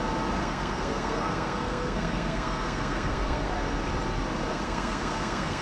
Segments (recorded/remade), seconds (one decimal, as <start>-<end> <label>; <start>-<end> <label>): 0.0-0.4 recorded; 0.4-3.5 remade; 3.5-4.5 recorded; 4.5-5.6 remade